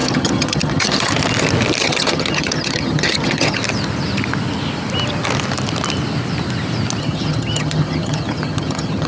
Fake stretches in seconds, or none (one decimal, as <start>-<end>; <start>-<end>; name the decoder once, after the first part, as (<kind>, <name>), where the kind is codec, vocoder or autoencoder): 0.0-1.1 (vocoder, HiFi-GAN); 1.8-3.6; 7.0-9.1